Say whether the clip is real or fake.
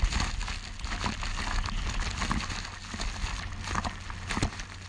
real